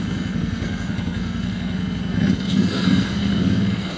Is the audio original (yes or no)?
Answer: no